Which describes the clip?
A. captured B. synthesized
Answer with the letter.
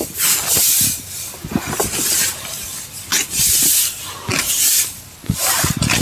A